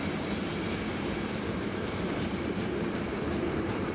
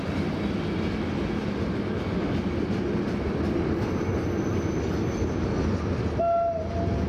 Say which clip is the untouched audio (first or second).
second